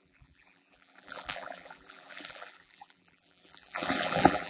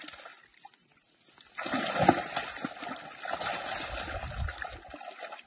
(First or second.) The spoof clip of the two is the first